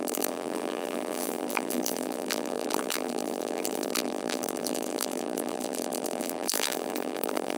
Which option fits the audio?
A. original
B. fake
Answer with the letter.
B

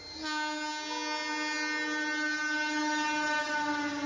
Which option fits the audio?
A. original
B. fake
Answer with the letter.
A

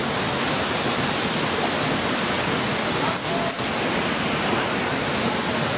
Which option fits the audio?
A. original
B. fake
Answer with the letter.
A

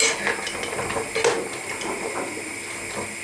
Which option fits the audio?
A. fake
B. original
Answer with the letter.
B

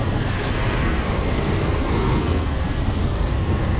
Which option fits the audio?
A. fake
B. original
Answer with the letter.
A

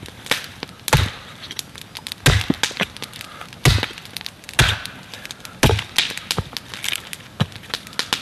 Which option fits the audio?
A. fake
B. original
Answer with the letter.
B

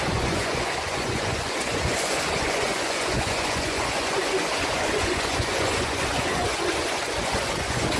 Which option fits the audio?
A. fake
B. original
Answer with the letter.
A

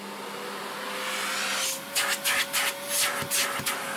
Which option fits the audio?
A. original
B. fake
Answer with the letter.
A